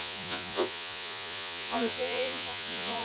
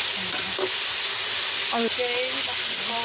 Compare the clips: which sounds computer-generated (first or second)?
first